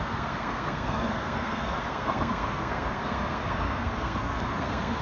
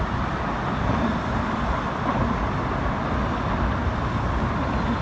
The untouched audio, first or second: second